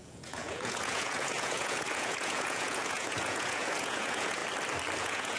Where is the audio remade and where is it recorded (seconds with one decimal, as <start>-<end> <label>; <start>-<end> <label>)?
0.0-4.4 remade; 4.4-5.0 recorded; 5.0-5.4 remade